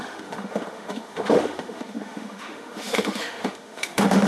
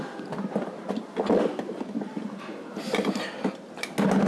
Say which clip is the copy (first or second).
first